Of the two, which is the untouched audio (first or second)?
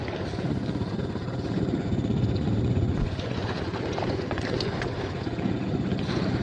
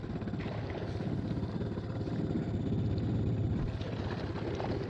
second